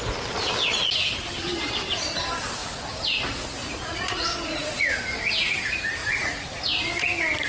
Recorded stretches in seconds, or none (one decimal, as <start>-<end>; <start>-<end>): 0.0-3.6; 5.0-6.0; 6.6-7.5